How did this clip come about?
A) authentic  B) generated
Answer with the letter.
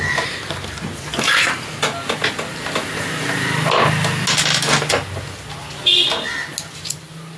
A